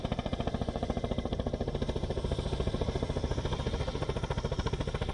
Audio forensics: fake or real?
real